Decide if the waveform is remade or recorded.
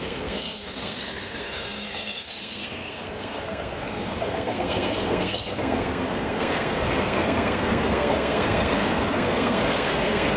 remade